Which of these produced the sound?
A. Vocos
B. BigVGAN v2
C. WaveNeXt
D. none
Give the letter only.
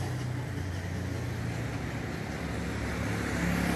D